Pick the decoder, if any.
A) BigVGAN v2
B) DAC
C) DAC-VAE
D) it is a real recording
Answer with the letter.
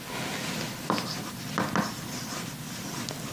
D